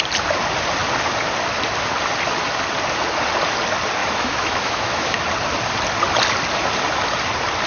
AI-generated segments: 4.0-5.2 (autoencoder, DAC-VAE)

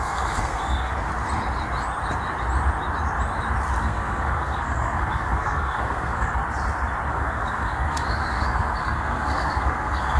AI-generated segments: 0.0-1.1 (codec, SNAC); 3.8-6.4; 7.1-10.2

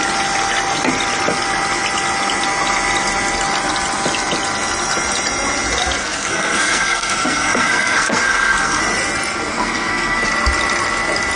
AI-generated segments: 6.0-8.8 (codec, SNAC); 9.5-10.3

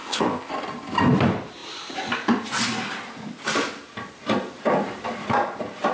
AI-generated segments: 0.0-0.5 (codec, ZipCodec)

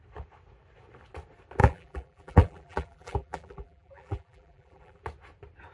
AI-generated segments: 1.6-5.0 (vocoder, BigVGAN v2)